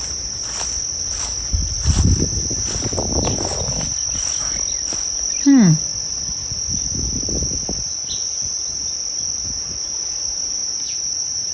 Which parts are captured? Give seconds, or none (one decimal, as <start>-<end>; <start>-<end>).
0.0-11.5

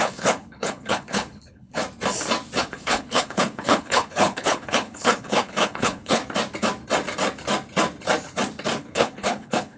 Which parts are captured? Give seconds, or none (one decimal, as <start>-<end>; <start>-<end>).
1.8-2.6; 6.2-8.8

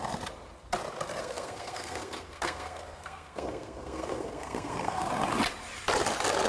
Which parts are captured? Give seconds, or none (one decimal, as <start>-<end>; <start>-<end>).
0.0-1.2; 5.1-6.5